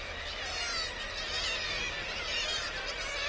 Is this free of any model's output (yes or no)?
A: yes